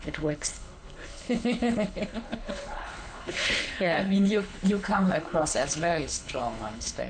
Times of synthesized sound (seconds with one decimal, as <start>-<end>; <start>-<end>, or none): 0.0-7.1